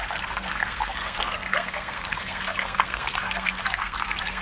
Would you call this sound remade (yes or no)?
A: yes